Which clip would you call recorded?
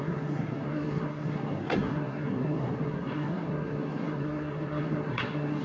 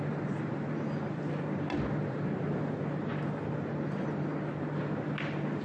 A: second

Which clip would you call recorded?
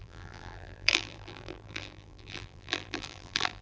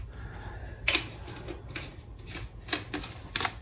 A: second